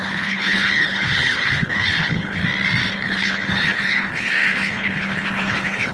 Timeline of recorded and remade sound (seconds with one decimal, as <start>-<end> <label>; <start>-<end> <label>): 0.0-2.4 remade; 2.4-2.9 recorded; 2.9-5.9 remade